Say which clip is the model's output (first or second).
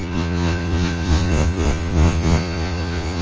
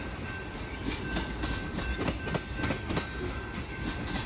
first